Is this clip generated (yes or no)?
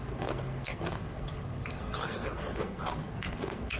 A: yes